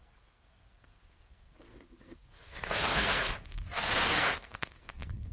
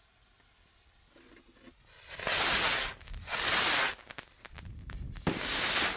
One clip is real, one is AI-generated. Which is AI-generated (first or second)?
first